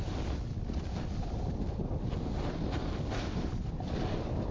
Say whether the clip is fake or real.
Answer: real